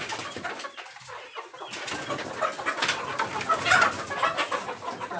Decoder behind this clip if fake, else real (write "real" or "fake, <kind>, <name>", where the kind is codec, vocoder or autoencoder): real